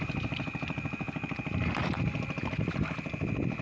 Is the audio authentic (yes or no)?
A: no